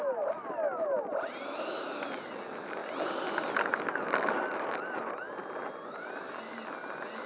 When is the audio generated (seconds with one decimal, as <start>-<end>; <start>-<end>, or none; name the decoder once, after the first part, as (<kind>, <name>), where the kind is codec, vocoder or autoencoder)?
none